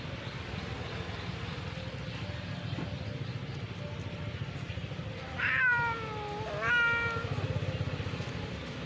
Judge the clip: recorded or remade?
recorded